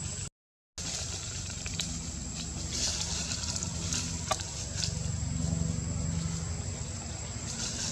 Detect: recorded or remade recorded